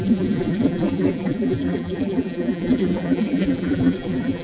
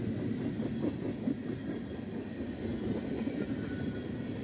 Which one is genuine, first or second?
second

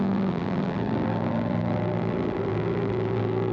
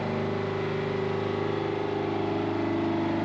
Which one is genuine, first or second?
second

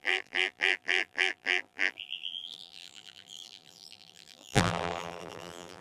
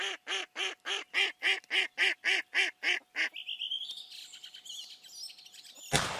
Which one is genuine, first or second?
second